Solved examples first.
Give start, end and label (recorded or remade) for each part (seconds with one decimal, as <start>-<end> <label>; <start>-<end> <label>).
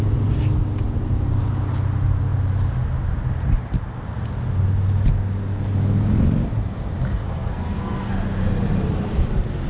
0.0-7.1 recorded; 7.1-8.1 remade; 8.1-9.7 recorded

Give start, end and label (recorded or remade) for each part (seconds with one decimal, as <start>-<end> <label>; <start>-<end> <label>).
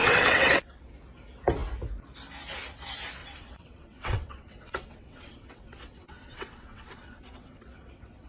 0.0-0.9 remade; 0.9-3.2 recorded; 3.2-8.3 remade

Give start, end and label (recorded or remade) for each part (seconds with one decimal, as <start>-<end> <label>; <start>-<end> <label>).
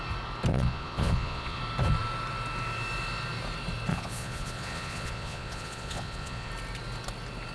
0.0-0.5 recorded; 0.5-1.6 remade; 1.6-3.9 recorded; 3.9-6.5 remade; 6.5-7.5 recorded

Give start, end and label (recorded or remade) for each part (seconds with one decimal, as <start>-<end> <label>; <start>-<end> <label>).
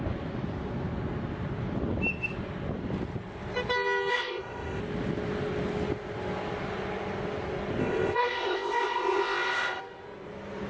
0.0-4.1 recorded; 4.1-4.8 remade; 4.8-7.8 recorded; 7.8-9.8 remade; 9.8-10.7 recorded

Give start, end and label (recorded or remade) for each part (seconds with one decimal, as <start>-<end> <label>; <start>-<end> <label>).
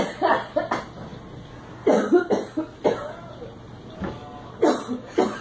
0.0-5.4 recorded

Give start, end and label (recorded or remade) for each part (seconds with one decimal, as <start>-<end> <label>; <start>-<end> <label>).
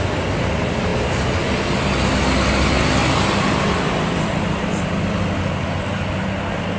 0.0-6.8 recorded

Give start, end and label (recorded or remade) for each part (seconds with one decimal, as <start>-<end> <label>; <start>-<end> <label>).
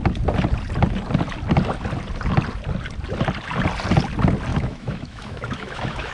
0.0-4.5 recorded; 4.5-6.1 remade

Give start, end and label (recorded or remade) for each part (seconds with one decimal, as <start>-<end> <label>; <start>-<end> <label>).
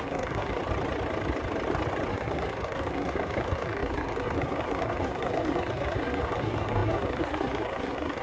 0.0-0.6 remade; 0.6-2.1 recorded; 2.1-8.2 remade